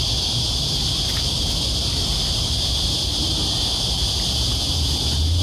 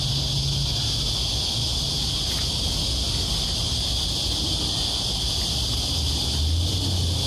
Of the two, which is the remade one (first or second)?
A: first